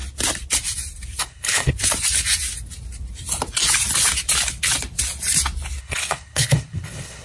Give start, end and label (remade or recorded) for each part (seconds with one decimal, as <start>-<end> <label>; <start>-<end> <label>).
0.0-1.2 recorded; 1.2-1.7 remade; 1.7-5.8 recorded; 5.8-7.2 remade